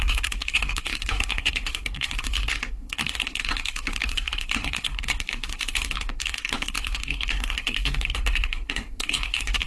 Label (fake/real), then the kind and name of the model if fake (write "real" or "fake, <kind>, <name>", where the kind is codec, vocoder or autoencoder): fake, codec, SNAC